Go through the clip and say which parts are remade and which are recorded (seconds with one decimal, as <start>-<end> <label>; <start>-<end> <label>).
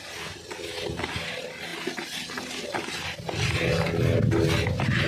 0.0-5.1 recorded